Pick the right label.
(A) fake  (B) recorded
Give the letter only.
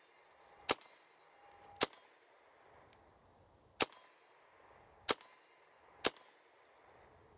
B